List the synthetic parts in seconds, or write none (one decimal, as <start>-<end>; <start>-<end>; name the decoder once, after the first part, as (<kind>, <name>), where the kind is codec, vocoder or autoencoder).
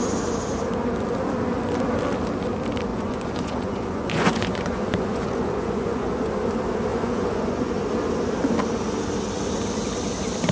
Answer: 2.9-6.3 (vocoder, Vocos); 6.9-7.7